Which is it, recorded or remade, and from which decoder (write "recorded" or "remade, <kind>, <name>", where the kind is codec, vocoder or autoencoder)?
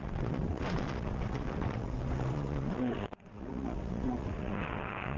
remade, vocoder, WaveNeXt